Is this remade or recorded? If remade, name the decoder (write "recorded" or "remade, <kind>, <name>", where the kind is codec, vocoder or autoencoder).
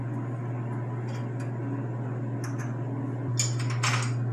recorded